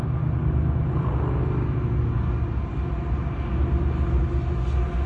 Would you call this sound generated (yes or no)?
no